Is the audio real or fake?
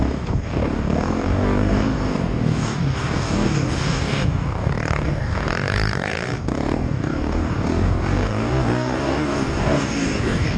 fake